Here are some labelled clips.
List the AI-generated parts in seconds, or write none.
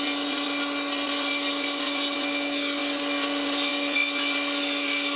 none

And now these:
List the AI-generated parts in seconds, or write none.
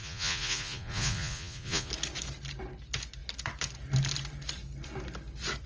0.0-1.9 (vocoder, Vocos)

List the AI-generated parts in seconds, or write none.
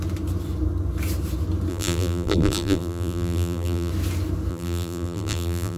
1.7-3.9 (vocoder, BigVGAN v2); 4.5-5.8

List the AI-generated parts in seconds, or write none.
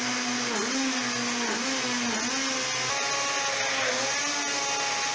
none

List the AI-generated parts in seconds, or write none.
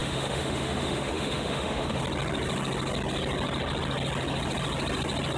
0.0-2.0 (autoencoder, DAC-VAE)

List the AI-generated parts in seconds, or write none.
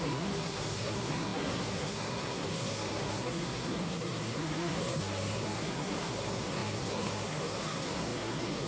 0.0-8.7 (codec, SNAC)